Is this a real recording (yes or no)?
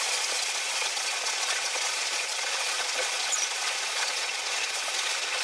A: no